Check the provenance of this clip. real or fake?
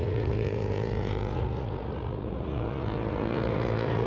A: fake